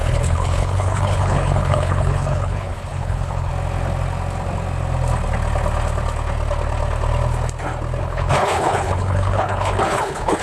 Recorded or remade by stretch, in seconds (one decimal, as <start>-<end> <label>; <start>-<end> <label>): 0.0-3.5 remade; 3.5-8.0 recorded; 8.0-10.4 remade